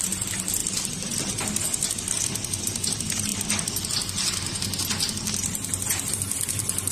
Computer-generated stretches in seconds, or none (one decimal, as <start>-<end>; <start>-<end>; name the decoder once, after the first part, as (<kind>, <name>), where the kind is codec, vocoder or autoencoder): none